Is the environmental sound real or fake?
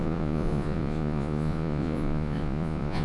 fake